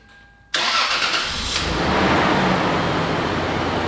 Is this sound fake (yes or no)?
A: no